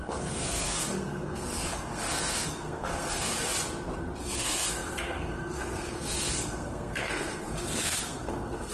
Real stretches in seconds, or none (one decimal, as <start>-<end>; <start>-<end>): 3.3-4.2